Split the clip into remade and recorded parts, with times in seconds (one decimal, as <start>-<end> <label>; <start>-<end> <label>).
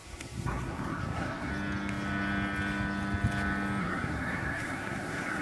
0.0-1.5 remade; 1.5-3.8 recorded; 3.8-5.4 remade